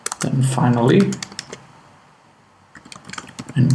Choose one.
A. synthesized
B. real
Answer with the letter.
B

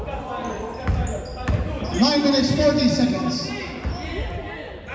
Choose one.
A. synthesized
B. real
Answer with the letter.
B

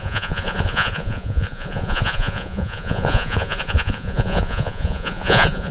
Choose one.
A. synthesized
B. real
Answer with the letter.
A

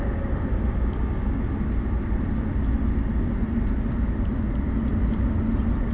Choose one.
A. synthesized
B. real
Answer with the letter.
B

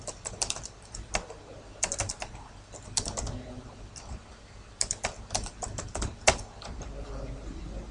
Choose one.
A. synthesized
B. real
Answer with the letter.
A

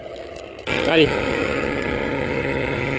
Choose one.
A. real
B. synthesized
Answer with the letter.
B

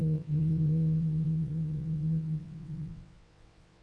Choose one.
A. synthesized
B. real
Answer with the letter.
A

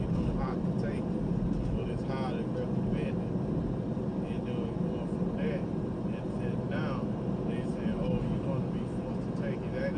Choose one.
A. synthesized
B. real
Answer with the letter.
B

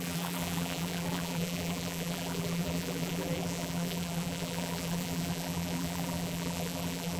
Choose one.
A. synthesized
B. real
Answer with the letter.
A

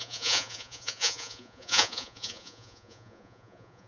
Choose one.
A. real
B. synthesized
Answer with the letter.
B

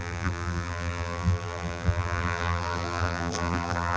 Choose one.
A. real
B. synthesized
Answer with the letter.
B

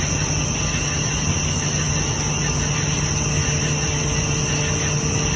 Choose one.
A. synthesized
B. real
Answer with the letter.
B